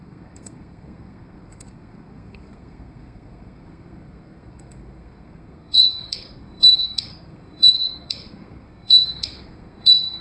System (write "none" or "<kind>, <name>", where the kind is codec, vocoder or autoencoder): codec, SNAC